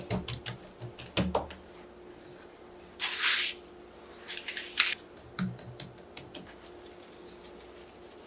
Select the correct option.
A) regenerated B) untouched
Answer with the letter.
B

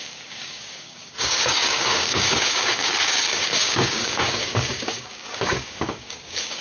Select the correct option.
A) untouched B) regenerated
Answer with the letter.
B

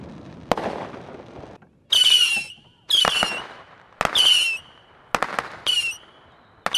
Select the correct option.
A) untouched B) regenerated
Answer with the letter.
A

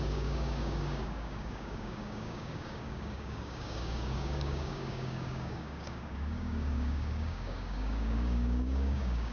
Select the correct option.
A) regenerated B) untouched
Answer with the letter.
A